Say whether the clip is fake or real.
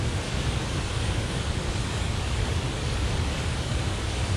fake